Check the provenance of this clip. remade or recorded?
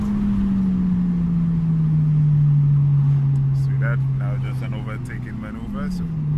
recorded